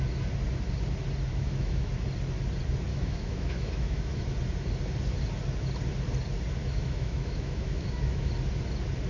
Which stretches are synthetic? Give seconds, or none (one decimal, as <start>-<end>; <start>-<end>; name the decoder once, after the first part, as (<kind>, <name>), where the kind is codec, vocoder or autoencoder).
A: 1.3-1.9 (autoencoder, DAC-VAE); 2.9-4.2; 6.6-8.3

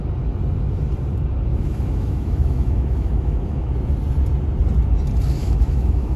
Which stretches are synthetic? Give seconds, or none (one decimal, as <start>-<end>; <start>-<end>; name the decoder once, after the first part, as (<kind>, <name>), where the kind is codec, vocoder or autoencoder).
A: 1.5-3.7 (autoencoder, DAC-VAE); 5.4-6.2

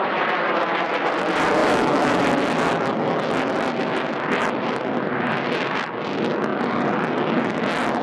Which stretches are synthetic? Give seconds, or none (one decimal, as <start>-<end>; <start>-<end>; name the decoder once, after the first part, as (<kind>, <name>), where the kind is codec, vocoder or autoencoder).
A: 1.6-2.2 (autoencoder, DAC-VAE)

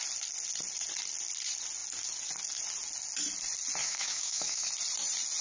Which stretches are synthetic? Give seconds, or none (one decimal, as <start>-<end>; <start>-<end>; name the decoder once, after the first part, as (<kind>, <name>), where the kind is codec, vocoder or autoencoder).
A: 3.8-4.7 (autoencoder, DAC-VAE)

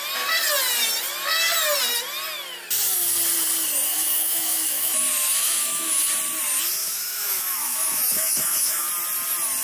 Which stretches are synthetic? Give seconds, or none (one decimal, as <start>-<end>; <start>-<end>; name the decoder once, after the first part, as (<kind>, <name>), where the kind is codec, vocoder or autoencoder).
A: 3.9-5.0 (autoencoder, DAC-VAE); 5.4-6.0; 6.8-8.9

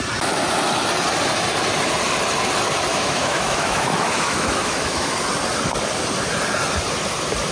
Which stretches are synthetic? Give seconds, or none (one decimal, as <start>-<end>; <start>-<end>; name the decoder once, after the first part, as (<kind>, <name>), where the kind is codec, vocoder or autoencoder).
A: 2.9-5.1 (autoencoder, DAC-VAE)

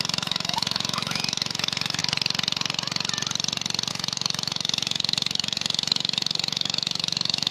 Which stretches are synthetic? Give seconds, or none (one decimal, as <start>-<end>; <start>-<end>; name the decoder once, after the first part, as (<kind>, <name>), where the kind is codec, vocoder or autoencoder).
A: 0.0-2.0 (autoencoder, DAC-VAE); 3.9-7.5